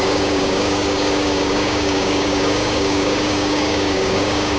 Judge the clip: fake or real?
fake